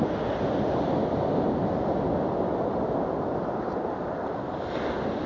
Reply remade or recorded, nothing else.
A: recorded